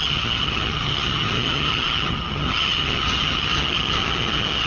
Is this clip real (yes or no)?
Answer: no